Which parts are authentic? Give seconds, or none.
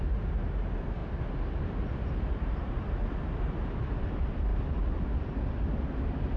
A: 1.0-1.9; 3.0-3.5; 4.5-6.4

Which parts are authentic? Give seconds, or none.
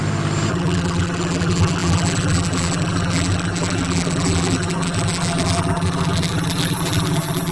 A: 0.0-0.5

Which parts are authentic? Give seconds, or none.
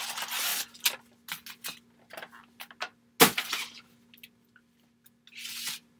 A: 0.0-6.0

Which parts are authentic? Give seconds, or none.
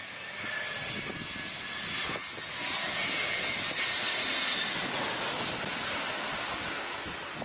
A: 0.0-7.4